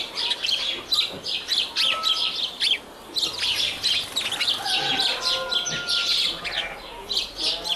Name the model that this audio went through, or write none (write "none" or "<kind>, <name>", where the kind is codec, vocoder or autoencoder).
none